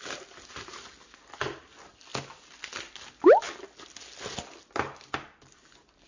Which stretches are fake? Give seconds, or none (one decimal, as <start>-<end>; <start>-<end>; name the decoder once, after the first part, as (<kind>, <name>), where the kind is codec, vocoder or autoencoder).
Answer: none